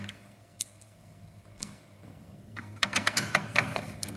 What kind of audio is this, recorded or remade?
remade